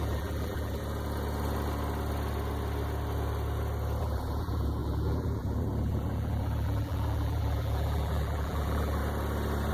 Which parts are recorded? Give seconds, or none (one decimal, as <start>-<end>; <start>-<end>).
0.8-4.0; 9.0-9.7